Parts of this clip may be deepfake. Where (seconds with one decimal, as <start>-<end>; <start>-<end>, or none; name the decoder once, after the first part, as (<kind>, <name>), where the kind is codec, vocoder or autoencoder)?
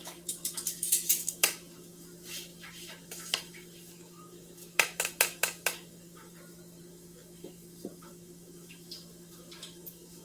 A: 0.0-10.2 (autoencoder, DAC-VAE)